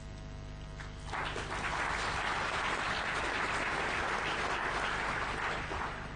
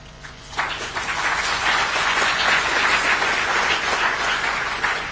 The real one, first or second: first